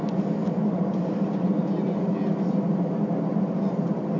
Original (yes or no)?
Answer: yes